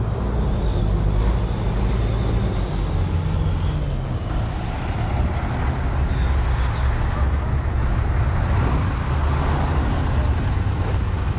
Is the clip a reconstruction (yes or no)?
no